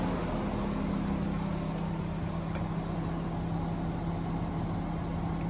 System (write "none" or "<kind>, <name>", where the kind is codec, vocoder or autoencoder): none